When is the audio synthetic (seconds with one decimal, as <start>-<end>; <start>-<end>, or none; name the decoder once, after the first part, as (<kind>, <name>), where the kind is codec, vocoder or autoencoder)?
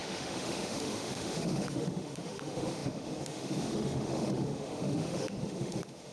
0.0-6.1 (autoencoder, DAC-VAE)